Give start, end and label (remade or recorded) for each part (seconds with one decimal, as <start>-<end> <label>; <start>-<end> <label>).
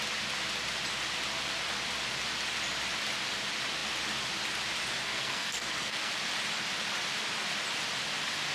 0.0-5.0 recorded; 5.0-6.1 remade; 6.1-8.5 recorded